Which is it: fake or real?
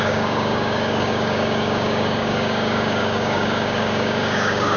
fake